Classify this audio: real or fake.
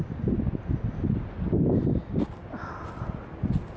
real